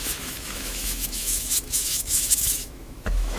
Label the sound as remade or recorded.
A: remade